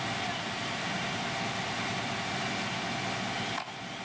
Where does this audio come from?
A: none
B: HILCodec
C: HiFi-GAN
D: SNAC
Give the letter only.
A